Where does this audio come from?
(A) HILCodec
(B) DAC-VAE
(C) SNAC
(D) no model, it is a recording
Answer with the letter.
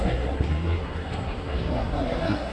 C